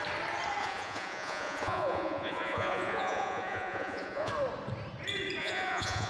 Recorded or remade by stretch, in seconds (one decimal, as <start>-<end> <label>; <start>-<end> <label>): 0.0-0.6 recorded; 0.6-4.3 remade; 4.3-5.4 recorded; 5.4-6.1 remade